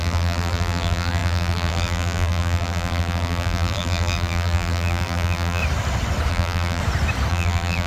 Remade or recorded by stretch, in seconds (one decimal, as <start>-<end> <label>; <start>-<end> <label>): 0.0-5.6 remade; 5.6-6.3 recorded; 6.3-6.8 remade; 6.8-7.3 recorded; 7.3-7.9 remade